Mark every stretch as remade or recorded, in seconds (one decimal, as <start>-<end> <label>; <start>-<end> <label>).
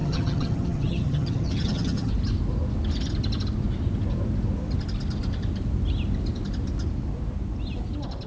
0.0-2.1 remade; 2.1-8.3 recorded